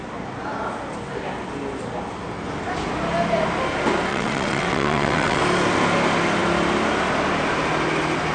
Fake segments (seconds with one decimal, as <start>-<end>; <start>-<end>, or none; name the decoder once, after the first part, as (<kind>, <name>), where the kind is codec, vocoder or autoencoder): 4.1-5.4 (vocoder, WaveNeXt)